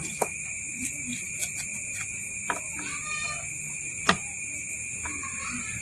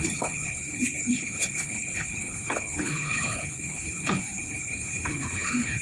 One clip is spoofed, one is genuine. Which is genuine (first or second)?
first